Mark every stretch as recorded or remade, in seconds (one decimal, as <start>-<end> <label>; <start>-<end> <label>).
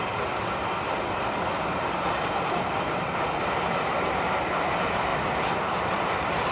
0.0-3.9 remade; 3.9-5.1 recorded; 5.1-6.5 remade